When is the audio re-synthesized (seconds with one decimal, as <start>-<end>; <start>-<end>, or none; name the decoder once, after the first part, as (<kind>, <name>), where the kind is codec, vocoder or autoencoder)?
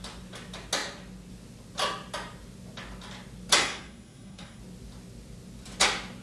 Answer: 3.6-4.6 (codec, SNAC)